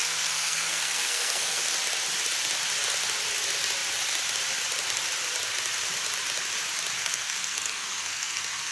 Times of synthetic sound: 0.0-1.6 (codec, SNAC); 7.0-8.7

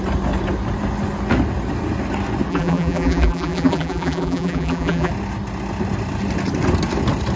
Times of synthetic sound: 2.5-5.1 (vocoder, BigVGAN v2)

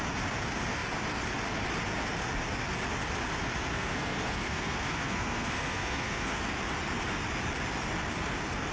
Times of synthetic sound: 3.7-6.4 (codec, SNAC)